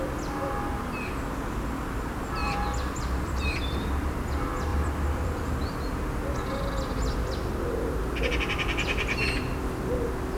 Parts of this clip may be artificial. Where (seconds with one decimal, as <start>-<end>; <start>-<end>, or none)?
2.4-4.2; 4.7-5.4